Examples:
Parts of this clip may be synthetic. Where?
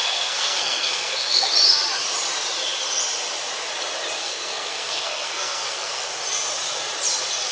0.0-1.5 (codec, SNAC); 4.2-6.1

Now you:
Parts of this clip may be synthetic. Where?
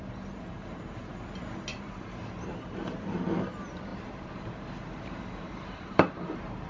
1.7-3.4 (vocoder, BigVGAN v2); 3.9-6.7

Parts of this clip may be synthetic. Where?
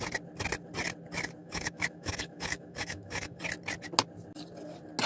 1.4-3.4 (autoencoder, DAC-VAE)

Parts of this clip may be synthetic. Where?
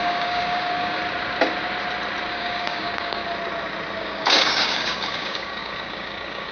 0.0-1.0 (codec, DAC); 2.3-3.2; 4.0-6.5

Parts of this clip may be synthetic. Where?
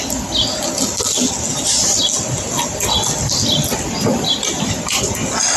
none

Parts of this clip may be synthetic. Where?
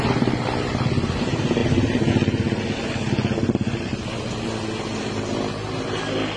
none